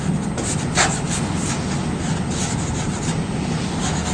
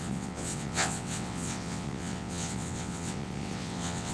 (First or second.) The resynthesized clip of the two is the second